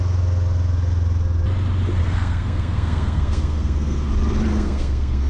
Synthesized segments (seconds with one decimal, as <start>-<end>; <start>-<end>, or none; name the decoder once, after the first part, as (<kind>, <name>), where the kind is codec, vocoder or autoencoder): 2.0-4.1 (codec, SNAC); 4.5-5.3